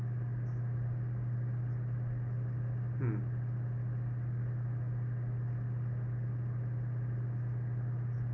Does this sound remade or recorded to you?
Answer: recorded